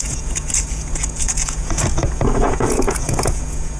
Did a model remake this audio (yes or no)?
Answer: yes